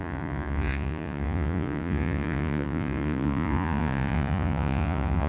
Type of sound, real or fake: fake